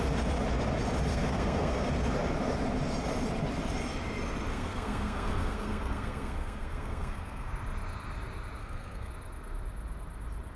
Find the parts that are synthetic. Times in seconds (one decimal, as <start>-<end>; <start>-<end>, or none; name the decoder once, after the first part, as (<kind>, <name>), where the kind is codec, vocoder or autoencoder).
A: 1.1-1.9 (codec, SNAC); 4.5-7.5; 8.6-9.1